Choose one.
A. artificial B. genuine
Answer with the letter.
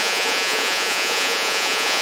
A